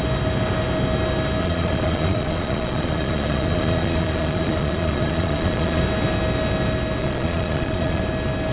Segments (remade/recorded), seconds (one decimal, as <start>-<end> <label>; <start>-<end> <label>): 0.0-1.4 recorded; 1.4-5.8 remade; 5.8-7.0 recorded; 7.0-8.0 remade; 8.0-8.5 recorded